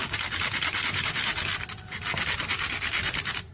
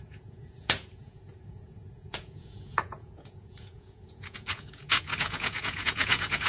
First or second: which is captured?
first